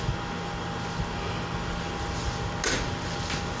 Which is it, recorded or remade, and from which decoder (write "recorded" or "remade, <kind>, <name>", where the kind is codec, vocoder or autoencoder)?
recorded